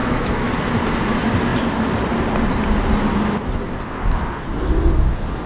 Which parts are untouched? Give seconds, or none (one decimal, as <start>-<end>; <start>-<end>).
0.5-5.5